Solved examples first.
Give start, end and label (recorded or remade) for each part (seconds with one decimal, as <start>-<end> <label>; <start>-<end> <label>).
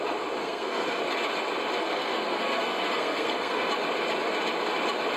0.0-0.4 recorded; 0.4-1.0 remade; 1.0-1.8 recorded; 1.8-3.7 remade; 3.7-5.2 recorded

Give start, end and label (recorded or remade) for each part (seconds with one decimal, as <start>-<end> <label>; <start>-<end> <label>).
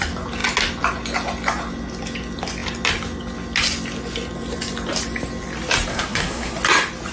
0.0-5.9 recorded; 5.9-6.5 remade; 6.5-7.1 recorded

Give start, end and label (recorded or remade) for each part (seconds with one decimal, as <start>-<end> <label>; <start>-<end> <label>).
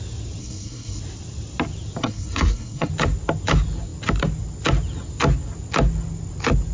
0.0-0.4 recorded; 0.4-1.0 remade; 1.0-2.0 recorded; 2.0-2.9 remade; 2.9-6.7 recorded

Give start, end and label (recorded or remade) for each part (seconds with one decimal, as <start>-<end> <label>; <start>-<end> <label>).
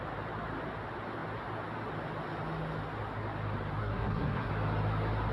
0.0-3.8 recorded; 3.8-4.5 remade; 4.5-5.3 recorded